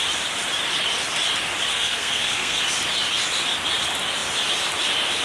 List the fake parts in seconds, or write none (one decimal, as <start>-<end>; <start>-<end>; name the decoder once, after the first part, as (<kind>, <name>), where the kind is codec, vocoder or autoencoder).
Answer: 1.7-2.6 (codec, SNAC)